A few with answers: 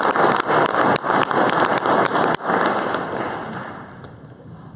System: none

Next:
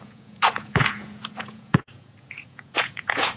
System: vocoder, Vocos